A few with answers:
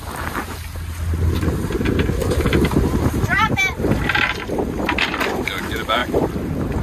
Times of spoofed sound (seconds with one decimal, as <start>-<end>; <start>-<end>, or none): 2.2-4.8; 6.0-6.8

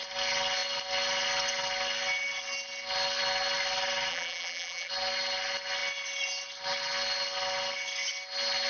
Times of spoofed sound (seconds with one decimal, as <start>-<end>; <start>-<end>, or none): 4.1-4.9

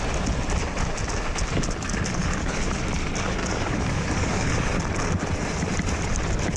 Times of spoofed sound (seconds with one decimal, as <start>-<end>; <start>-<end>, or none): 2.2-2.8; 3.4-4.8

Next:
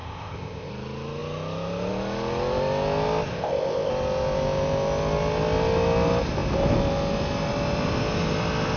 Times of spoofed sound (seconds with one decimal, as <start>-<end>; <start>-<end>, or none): 0.0-0.7; 3.3-3.9

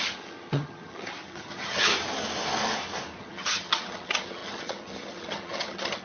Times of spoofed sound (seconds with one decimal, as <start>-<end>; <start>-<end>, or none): 0.0-1.9; 3.2-6.0

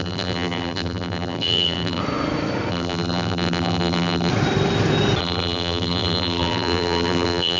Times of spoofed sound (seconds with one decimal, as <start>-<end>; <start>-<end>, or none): 0.0-2.0; 2.7-4.3; 5.2-7.6

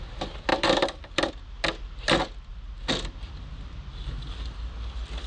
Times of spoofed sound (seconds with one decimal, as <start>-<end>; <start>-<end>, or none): 0.5-1.3